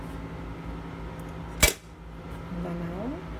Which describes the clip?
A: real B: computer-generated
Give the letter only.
A